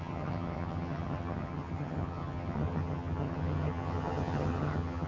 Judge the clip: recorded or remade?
remade